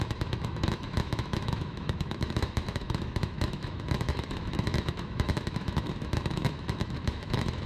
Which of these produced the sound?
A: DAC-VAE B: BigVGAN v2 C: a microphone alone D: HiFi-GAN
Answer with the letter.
A